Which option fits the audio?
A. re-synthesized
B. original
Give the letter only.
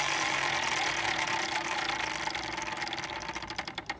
B